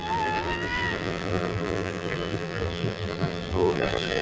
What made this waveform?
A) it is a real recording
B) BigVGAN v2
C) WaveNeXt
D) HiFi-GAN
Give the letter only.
B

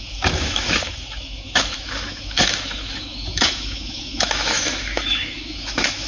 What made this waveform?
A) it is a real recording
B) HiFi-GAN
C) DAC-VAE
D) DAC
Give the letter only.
C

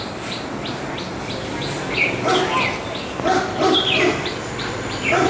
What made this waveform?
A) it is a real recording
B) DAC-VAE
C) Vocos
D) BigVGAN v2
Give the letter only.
A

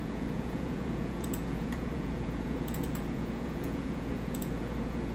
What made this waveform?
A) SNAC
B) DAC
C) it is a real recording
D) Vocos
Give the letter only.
D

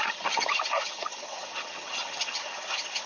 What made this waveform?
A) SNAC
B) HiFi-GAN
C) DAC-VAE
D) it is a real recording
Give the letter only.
B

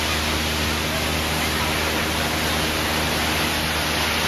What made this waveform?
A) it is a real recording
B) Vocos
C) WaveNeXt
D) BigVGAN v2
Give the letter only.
A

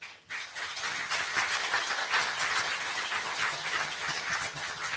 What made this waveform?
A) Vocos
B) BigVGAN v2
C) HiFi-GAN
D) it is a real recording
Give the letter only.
C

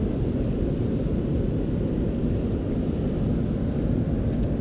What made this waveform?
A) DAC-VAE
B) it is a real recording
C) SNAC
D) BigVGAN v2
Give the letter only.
B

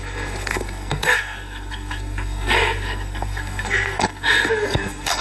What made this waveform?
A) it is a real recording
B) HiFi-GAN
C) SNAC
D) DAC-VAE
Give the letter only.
C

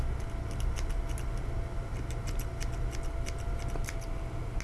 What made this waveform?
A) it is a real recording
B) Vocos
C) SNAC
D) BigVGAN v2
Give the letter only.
A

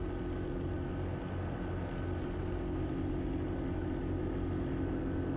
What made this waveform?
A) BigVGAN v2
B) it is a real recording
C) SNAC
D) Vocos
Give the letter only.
B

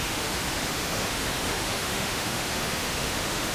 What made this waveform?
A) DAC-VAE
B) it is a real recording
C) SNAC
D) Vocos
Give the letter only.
A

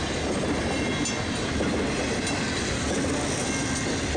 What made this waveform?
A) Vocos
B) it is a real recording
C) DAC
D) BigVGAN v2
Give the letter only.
B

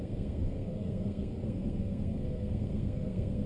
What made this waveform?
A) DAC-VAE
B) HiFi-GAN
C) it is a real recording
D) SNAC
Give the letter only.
D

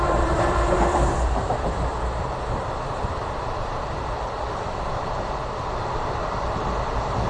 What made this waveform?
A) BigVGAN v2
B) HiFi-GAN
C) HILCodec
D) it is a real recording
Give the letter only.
A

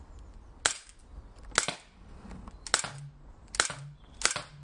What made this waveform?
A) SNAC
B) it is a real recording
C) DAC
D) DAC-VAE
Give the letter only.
B